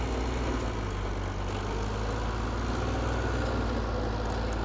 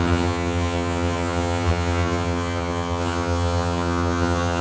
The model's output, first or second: second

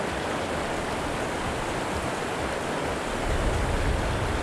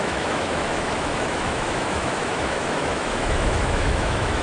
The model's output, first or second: second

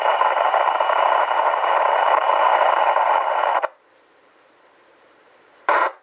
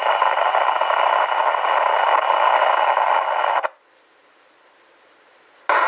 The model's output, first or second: first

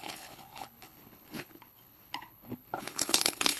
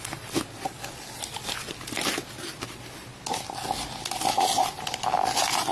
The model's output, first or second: first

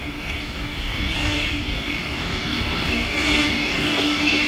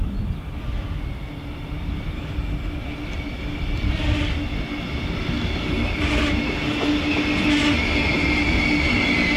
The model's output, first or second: first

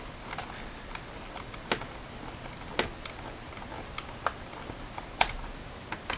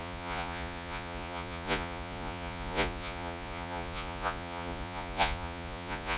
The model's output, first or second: second